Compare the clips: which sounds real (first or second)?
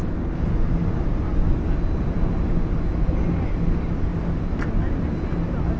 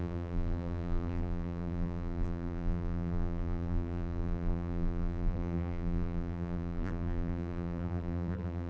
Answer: first